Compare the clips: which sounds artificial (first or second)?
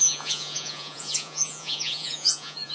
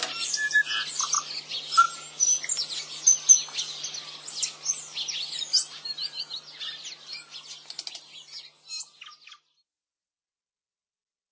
first